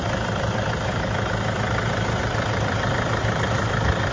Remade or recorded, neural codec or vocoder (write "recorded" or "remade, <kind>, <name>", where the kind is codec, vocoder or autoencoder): remade, vocoder, BigVGAN v2